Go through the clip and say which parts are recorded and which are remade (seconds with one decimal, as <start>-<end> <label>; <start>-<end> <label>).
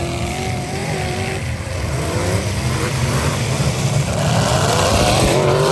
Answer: 0.0-5.7 remade